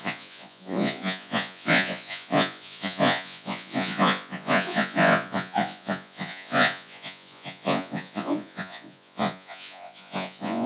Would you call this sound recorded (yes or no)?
no